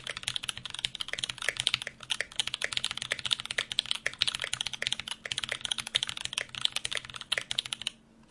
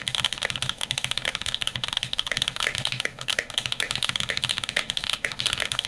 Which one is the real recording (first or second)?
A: first